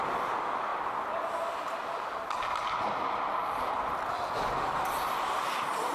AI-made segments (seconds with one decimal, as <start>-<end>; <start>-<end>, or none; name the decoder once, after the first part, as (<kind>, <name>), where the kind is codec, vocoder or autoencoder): none